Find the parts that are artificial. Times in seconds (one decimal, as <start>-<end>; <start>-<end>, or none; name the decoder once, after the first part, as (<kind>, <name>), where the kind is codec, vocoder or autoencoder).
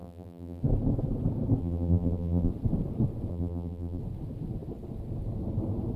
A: 0.0-0.6 (vocoder, BigVGAN v2); 1.6-2.5; 3.3-4.0